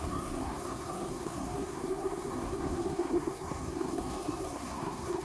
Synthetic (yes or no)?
yes